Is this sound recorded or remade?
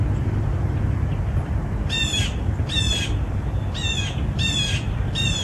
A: recorded